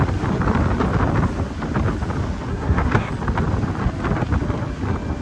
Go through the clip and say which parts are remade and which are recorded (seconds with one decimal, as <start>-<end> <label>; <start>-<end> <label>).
0.0-2.5 recorded; 2.5-3.1 remade; 3.1-5.2 recorded